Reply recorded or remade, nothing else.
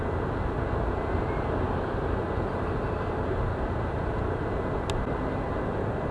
recorded